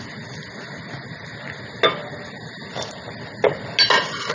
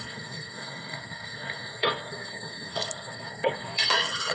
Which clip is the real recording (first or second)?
first